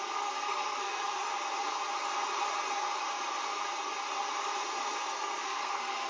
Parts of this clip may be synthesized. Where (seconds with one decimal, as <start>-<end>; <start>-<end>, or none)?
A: 0.0-1.3; 5.0-6.1

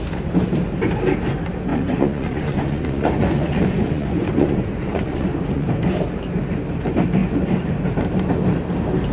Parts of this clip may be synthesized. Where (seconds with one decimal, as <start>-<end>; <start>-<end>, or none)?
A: 1.7-5.7

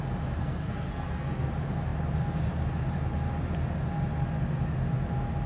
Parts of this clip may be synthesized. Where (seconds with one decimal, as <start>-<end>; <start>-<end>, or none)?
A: 0.4-1.5

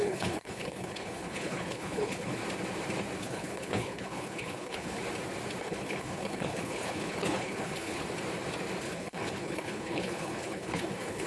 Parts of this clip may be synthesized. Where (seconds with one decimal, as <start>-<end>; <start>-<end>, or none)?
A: 0.0-2.4; 3.2-5.0; 5.6-8.0; 8.8-11.3

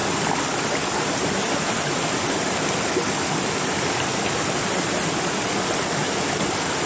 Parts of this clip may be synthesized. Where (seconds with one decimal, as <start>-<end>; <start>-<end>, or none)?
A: none